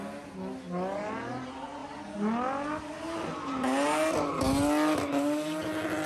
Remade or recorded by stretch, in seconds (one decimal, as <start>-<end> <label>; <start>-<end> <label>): 0.0-6.1 recorded